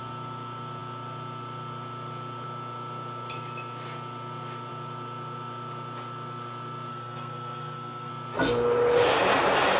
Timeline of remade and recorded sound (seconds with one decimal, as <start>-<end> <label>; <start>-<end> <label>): 0.0-6.9 recorded; 6.9-8.1 remade; 8.1-9.8 recorded